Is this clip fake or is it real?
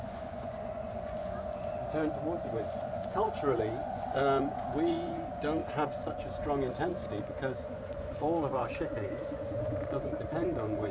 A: fake